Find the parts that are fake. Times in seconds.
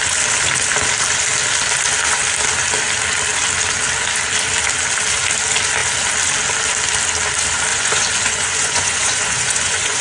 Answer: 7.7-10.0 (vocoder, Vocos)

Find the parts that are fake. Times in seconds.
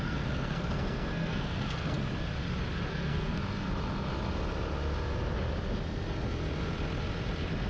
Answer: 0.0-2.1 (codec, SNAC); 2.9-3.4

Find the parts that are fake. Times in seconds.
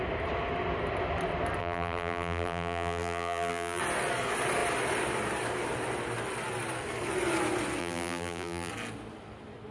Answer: 1.6-3.8 (vocoder, BigVGAN v2); 7.8-8.7